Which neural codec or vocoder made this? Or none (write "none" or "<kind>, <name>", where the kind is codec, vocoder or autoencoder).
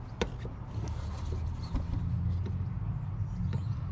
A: none